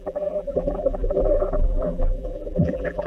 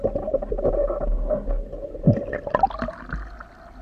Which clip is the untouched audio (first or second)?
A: second